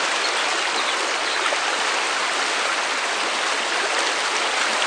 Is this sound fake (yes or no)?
no